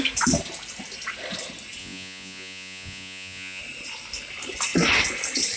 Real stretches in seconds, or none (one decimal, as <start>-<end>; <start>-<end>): 0.0-1.8; 3.6-5.6